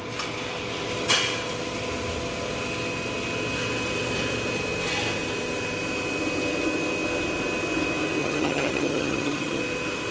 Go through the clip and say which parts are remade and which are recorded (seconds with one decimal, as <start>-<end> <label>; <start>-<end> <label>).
0.0-8.2 recorded; 8.2-9.6 remade; 9.6-10.1 recorded

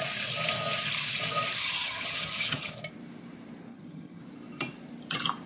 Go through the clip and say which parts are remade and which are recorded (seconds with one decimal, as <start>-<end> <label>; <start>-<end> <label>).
0.0-1.6 recorded; 1.6-2.7 remade; 2.7-3.7 recorded; 3.7-4.2 remade; 4.2-5.5 recorded